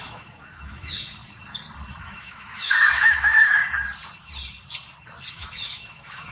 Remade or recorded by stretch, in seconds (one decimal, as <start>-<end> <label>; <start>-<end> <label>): 0.0-1.2 remade; 1.2-2.0 recorded; 2.0-3.6 remade; 3.6-5.3 recorded; 5.3-6.3 remade